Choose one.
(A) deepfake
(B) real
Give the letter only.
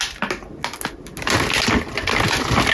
B